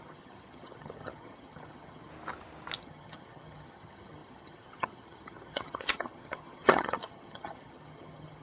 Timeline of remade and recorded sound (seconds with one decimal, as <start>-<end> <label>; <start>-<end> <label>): 0.0-2.1 remade; 2.1-2.8 recorded; 2.8-8.4 remade